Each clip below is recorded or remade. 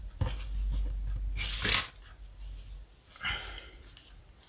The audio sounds recorded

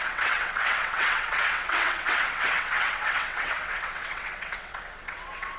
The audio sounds remade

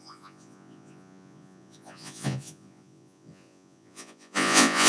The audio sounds remade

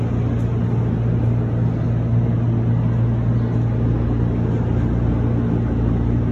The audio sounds recorded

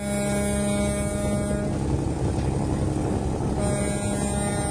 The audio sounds recorded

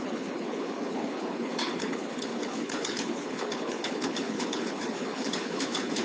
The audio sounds remade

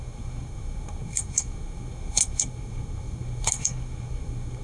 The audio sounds remade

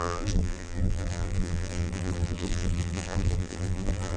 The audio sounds remade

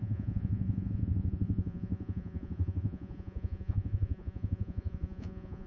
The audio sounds remade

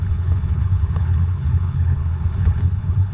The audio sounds remade